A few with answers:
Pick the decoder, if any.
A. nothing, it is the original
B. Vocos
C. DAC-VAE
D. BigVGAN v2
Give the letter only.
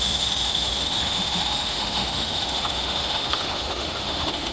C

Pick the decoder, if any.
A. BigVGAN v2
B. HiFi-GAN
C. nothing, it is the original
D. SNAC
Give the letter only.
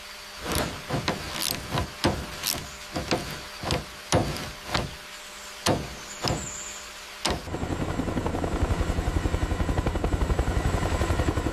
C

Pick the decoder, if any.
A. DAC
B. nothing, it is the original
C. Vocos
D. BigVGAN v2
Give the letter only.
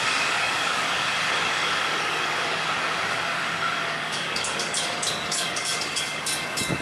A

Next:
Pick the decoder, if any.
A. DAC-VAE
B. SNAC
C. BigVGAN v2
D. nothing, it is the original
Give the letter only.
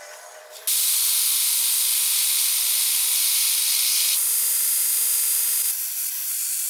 D